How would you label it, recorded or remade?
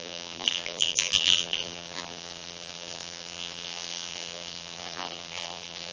remade